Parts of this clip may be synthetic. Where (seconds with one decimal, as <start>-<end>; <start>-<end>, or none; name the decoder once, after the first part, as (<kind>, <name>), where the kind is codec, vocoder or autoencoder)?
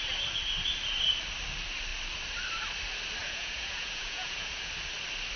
3.2-4.7 (vocoder, Vocos)